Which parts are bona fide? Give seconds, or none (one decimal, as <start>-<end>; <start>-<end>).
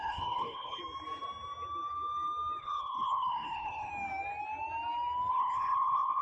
0.8-2.6; 3.9-5.3